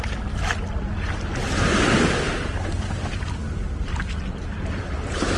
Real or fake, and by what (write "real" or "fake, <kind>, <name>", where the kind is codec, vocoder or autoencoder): real